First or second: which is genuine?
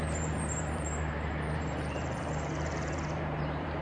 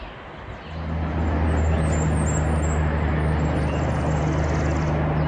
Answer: second